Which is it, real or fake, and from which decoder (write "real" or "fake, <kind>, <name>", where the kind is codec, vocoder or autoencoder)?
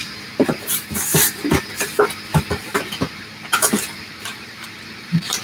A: fake, vocoder, BigVGAN v2